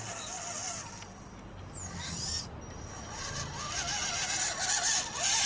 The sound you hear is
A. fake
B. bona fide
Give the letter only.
B